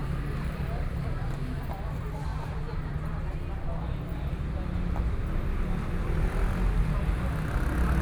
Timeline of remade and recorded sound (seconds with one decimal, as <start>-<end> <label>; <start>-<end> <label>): 0.0-1.3 remade; 1.3-8.0 recorded

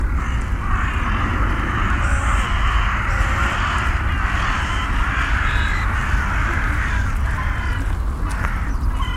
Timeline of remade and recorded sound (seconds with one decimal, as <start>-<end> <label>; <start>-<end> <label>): 0.0-2.3 recorded; 2.3-5.5 remade; 5.5-9.2 recorded

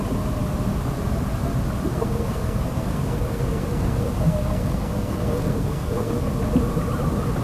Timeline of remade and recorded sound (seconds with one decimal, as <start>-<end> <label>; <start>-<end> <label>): 0.0-1.9 recorded; 1.9-6.3 remade; 6.3-7.4 recorded

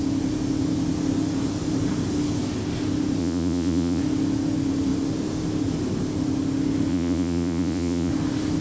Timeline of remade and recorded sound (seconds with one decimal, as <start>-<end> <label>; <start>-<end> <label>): 0.0-3.2 recorded; 3.2-4.0 remade; 4.0-6.9 recorded; 6.9-8.1 remade; 8.1-8.6 recorded

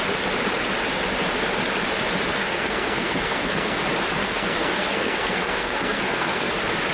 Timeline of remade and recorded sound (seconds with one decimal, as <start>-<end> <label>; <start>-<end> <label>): 0.0-2.3 recorded; 2.3-3.8 remade; 3.8-4.2 recorded; 4.2-6.5 remade; 6.5-6.9 recorded